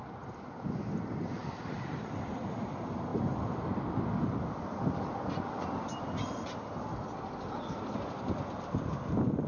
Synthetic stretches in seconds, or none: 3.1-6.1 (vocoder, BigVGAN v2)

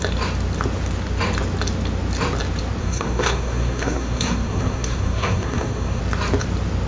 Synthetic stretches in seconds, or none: 2.8-6.0 (codec, SNAC)

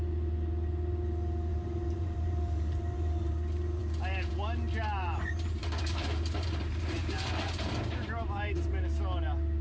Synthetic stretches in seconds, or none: 1.5-3.3 (vocoder, BigVGAN v2); 5.0-8.8

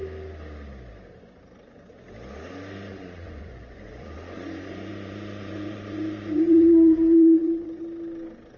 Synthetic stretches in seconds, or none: 2.9-7.8 (vocoder, Vocos)

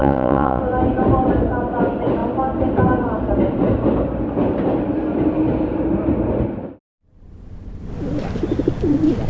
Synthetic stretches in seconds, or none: 0.0-0.6 (vocoder, WaveNeXt)

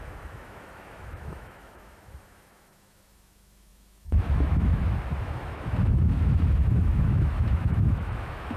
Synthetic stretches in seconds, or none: 0.0-4.7 (autoencoder, DAC-VAE); 5.2-8.6

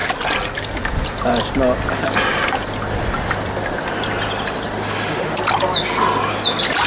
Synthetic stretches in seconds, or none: none

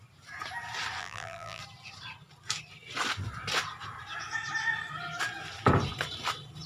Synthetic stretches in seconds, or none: 1.0-1.6 (vocoder, BigVGAN v2)